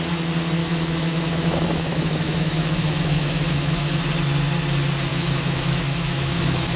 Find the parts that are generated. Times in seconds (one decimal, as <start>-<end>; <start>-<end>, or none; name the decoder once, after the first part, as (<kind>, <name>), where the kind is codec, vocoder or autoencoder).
0.6-4.0 (autoencoder, DAC-VAE); 5.1-6.8